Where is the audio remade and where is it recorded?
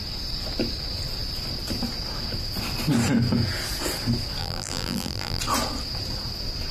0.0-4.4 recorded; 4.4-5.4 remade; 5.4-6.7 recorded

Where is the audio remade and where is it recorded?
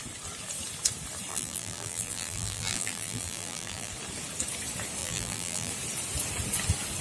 0.0-1.3 recorded; 1.3-3.9 remade; 3.9-5.0 recorded; 5.0-5.7 remade; 5.7-7.0 recorded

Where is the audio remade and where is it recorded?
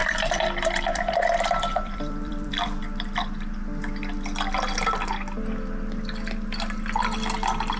0.0-1.2 remade; 1.2-1.7 recorded; 1.7-2.8 remade; 2.8-7.8 recorded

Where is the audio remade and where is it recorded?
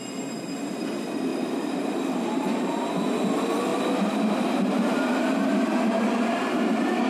0.0-1.3 recorded; 1.3-2.9 remade; 2.9-7.1 recorded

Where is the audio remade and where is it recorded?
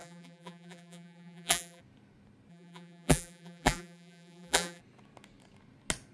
0.0-1.8 remade; 1.8-2.5 recorded; 2.5-4.8 remade; 4.8-6.1 recorded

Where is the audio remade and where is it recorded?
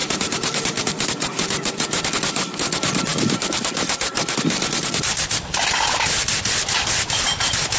0.0-2.0 remade; 2.0-7.8 recorded